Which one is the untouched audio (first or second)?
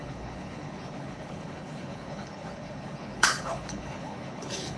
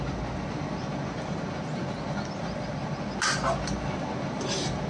second